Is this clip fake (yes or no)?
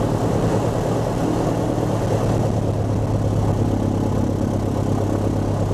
no